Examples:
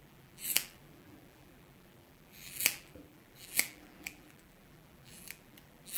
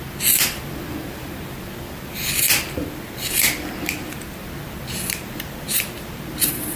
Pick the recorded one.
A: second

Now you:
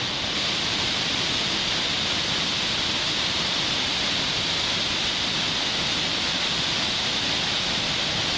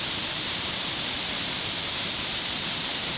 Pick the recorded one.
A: first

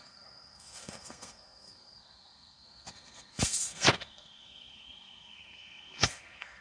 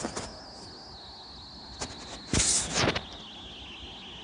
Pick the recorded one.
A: second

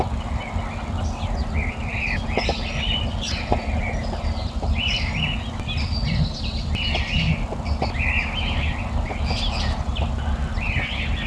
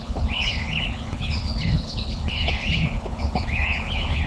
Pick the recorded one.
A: first